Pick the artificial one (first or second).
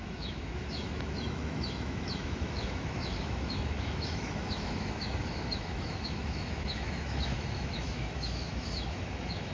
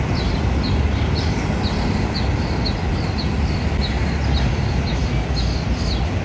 first